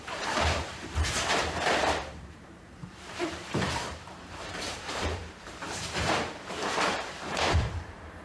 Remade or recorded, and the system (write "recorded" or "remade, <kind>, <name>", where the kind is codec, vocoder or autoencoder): remade, vocoder, BigVGAN v2